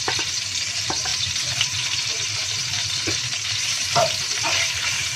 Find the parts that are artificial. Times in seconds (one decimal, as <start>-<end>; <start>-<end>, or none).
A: 0.0-5.2